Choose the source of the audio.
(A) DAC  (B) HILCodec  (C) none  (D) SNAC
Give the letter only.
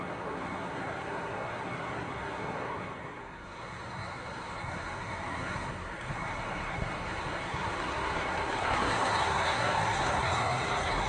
D